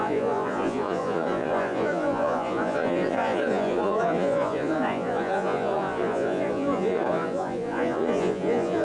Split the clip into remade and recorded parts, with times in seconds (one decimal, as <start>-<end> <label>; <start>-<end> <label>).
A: 0.0-8.8 remade